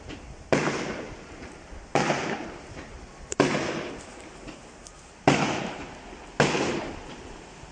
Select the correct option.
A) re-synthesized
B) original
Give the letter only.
B